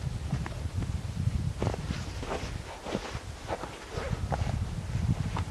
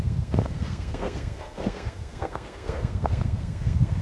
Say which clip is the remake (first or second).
second